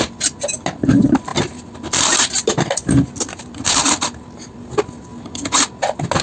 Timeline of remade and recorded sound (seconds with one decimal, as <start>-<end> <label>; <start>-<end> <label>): 0.0-6.2 recorded